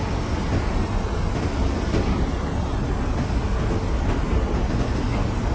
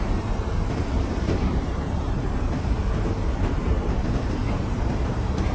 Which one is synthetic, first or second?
second